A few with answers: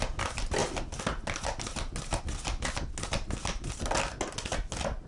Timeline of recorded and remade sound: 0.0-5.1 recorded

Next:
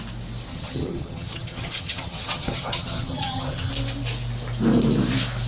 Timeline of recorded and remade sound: 0.0-0.5 recorded; 0.5-3.7 remade; 3.7-5.5 recorded

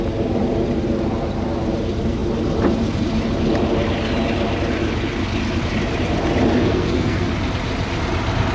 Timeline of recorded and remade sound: 0.0-6.6 recorded; 6.6-7.3 remade; 7.3-8.5 recorded

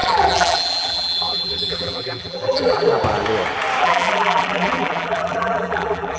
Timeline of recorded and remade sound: 0.0-2.9 remade; 2.9-3.8 recorded; 3.8-6.2 remade

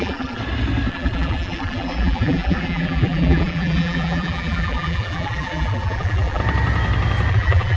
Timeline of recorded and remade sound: 0.0-0.4 remade; 0.4-0.9 recorded; 0.9-6.4 remade; 6.4-7.3 recorded; 7.3-7.8 remade

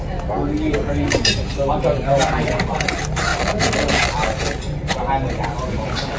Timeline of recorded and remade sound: 0.0-6.2 recorded

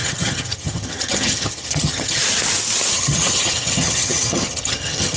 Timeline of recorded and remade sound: 0.0-2.2 remade; 2.2-2.9 recorded; 2.9-5.2 remade